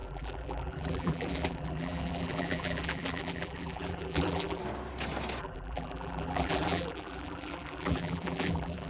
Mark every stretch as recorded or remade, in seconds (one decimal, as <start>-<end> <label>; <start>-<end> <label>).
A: 0.0-4.6 remade; 4.6-5.4 recorded; 5.4-8.9 remade